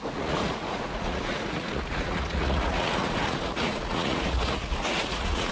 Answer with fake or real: fake